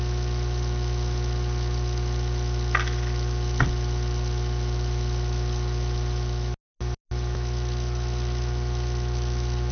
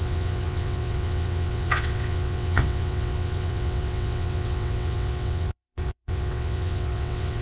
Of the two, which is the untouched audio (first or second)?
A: first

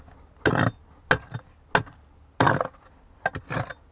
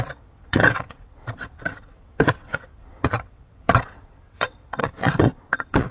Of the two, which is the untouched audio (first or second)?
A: first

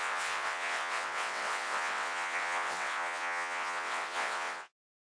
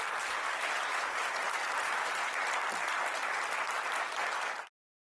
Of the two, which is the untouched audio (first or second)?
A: second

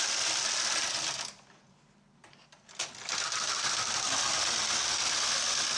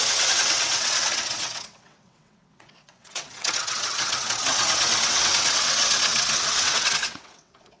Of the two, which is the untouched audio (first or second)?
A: first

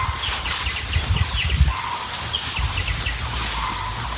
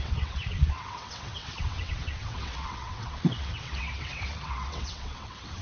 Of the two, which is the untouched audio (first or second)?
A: first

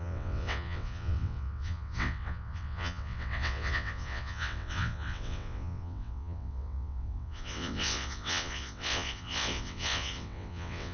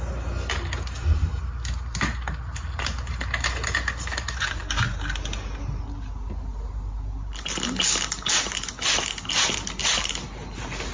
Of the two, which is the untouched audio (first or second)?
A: second